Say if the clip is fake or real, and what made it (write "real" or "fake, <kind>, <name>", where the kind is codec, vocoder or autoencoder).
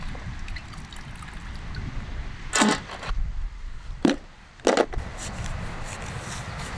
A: real